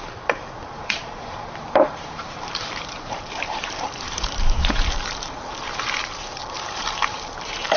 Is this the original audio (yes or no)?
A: no